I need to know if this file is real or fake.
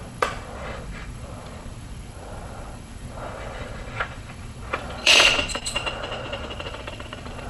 fake